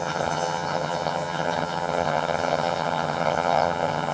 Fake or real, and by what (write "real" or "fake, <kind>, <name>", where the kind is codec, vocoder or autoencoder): fake, vocoder, HiFi-GAN